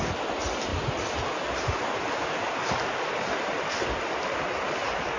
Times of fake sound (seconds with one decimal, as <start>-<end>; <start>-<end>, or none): none